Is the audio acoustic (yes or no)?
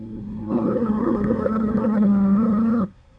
no